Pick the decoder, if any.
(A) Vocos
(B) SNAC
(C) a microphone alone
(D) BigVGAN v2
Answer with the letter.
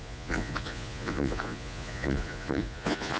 A